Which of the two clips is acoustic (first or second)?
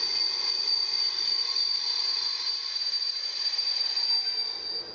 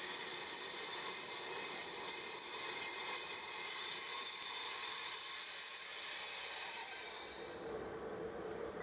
first